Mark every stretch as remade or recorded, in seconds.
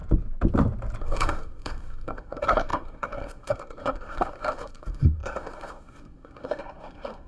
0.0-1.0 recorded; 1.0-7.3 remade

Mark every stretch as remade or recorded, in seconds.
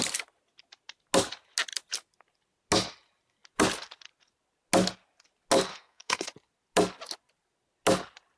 0.0-5.7 recorded; 5.7-6.3 remade; 6.3-8.4 recorded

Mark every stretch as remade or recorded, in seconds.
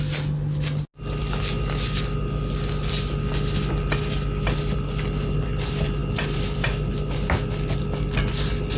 0.0-8.8 recorded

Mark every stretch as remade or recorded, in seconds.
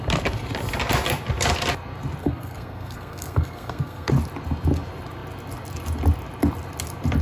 0.0-2.2 recorded; 2.2-4.1 remade; 4.1-7.2 recorded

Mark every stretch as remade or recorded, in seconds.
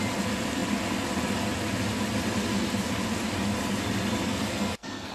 0.0-4.3 recorded; 4.3-5.1 remade